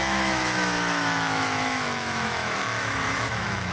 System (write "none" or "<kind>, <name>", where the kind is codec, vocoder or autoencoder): autoencoder, DAC-VAE